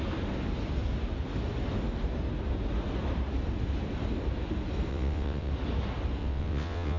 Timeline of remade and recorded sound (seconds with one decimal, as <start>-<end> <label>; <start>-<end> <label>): 0.0-4.9 recorded; 4.9-5.5 remade; 5.5-6.2 recorded; 6.2-7.0 remade